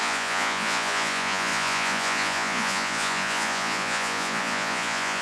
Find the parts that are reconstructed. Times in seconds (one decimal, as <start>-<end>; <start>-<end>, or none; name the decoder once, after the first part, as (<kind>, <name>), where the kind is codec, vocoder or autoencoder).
0.0-5.2 (vocoder, Vocos)